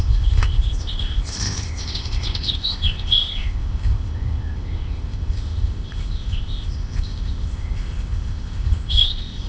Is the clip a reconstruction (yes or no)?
yes